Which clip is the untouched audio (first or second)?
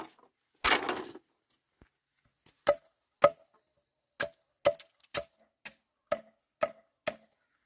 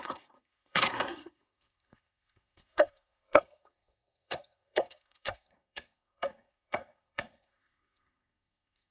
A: first